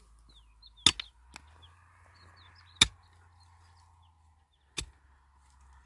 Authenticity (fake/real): real